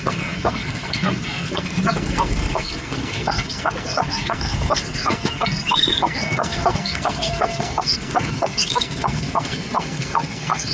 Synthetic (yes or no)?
yes